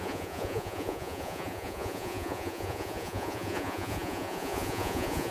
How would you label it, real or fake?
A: fake